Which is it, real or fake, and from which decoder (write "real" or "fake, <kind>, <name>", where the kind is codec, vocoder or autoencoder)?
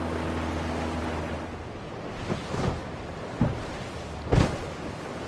real